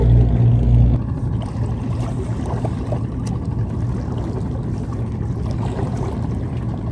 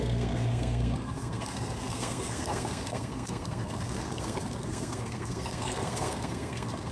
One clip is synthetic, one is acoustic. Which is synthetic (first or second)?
second